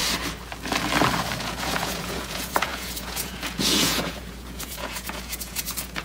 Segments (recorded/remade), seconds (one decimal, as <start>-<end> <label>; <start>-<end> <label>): 0.0-1.4 recorded; 1.4-6.0 remade

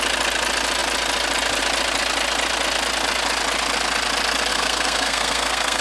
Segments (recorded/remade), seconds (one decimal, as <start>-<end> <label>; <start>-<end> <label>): 0.0-4.5 recorded; 4.5-5.8 remade

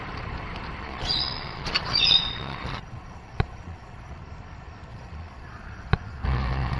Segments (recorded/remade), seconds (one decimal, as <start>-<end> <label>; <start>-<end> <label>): 0.0-0.8 recorded; 0.8-4.2 remade; 4.2-4.9 recorded; 4.9-6.8 remade

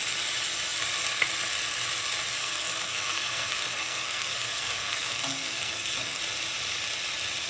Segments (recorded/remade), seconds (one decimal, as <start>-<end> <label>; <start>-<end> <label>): 0.0-2.4 recorded; 2.4-6.2 remade; 6.2-7.5 recorded

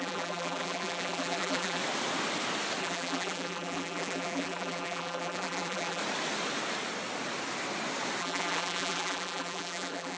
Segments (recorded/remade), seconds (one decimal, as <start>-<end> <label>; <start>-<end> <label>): 0.0-1.8 remade; 1.8-2.8 recorded; 2.8-6.0 remade; 6.0-8.2 recorded; 8.2-10.2 remade